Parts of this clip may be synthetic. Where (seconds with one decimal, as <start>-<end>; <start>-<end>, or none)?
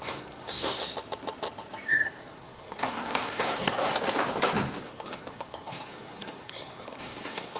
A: 0.0-0.8; 1.9-3.9; 4.8-7.6